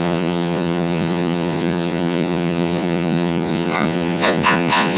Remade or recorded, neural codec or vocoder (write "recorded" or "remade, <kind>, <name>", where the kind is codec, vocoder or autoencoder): remade, vocoder, Vocos